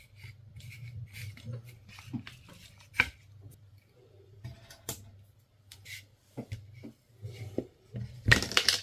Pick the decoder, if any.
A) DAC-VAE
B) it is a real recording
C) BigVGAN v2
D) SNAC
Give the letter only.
C